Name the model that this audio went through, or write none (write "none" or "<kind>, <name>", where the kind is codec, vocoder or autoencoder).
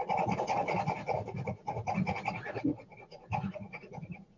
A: vocoder, Vocos